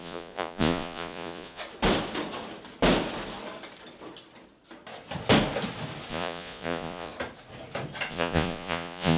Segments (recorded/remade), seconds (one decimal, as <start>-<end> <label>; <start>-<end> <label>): 0.0-1.6 remade; 1.6-6.1 recorded; 6.1-7.1 remade; 7.1-8.1 recorded; 8.1-9.2 remade